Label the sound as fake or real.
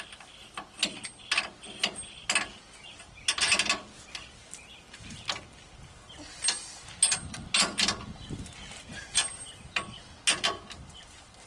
real